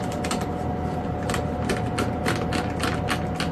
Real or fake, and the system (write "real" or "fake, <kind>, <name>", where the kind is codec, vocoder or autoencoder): real